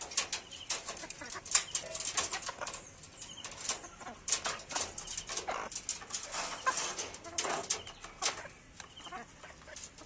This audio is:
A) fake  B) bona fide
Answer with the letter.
B